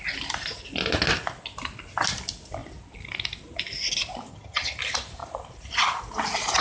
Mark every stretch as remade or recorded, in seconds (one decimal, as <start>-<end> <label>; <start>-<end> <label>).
0.0-4.3 recorded; 4.3-4.8 remade; 4.8-6.6 recorded